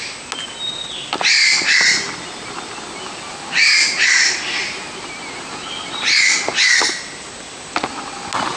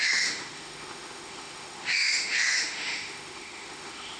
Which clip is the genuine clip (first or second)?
first